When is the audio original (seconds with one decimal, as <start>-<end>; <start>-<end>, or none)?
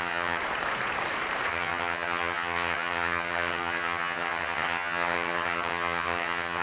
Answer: 0.4-1.5